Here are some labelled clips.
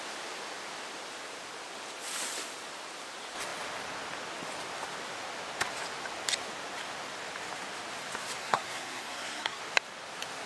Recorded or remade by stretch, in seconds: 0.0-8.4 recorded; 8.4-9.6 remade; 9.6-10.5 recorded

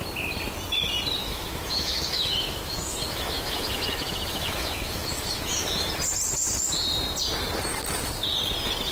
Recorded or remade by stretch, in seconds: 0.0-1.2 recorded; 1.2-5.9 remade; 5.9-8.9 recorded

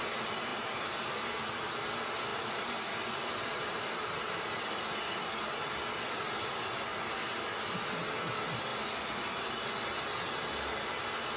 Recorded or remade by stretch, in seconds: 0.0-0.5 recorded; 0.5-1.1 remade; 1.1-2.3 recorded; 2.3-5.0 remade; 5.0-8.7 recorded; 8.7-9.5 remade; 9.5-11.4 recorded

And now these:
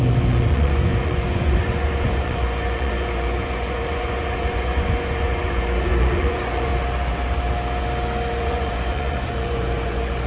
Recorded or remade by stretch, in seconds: 0.0-6.7 remade; 6.7-8.4 recorded; 8.4-10.3 remade

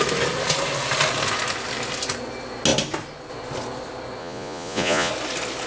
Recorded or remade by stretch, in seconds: 0.0-4.2 recorded; 4.2-5.1 remade; 5.1-5.7 recorded

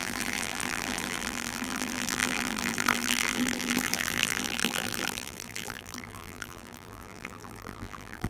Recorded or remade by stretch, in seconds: 0.0-8.3 remade

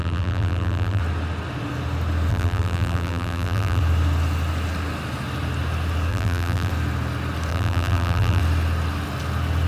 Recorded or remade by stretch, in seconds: 0.0-1.0 remade; 1.0-2.3 recorded; 2.3-3.8 remade; 3.8-6.1 recorded; 6.1-6.7 remade; 6.7-7.5 recorded; 7.5-8.4 remade; 8.4-9.7 recorded

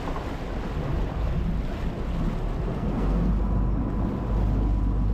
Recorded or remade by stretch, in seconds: 0.0-2.7 recorded; 2.7-3.3 remade; 3.3-5.1 recorded